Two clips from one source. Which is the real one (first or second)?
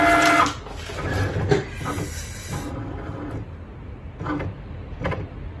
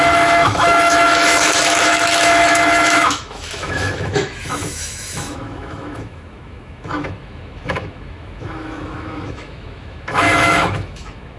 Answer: first